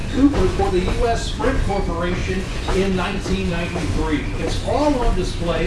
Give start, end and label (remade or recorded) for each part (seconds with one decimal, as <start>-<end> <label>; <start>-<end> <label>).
0.0-0.7 remade; 0.7-2.2 recorded; 2.2-3.5 remade; 3.5-5.7 recorded